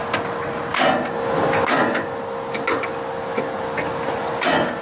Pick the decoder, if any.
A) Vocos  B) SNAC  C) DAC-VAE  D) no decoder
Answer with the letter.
D